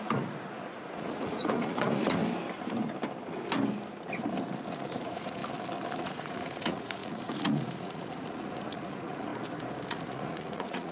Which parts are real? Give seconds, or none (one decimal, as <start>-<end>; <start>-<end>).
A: 2.2-4.7; 5.4-6.0; 9.3-9.9